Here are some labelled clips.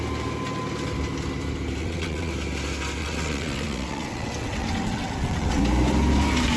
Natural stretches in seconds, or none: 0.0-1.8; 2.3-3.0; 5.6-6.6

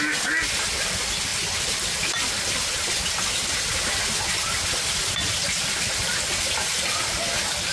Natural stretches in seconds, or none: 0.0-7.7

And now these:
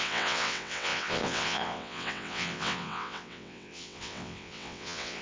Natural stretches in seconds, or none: none

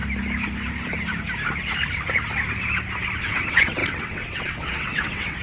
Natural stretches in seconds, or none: 0.0-3.2

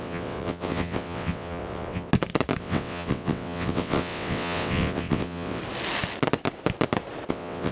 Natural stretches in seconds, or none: 2.1-2.6; 5.6-7.3

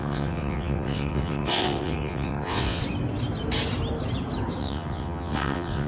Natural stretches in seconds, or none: 2.8-4.6